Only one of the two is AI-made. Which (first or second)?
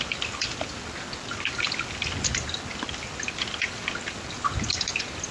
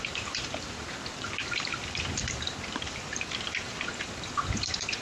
second